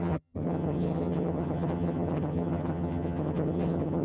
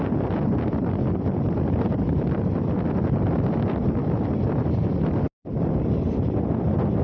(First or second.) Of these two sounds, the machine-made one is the first